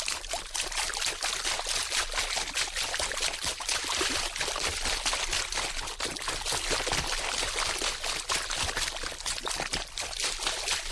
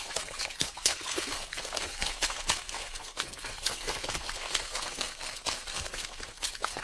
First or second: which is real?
first